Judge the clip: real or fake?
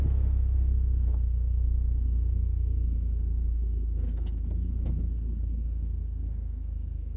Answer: fake